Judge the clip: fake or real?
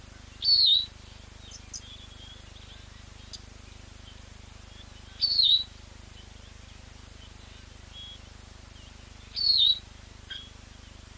real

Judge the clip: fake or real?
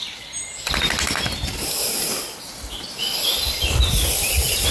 fake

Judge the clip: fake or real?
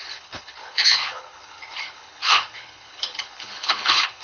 fake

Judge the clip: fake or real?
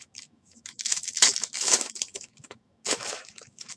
fake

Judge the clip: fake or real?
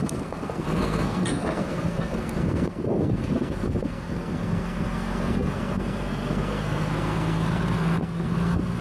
fake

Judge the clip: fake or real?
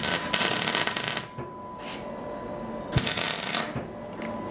real